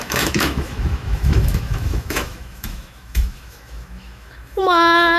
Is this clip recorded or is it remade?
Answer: remade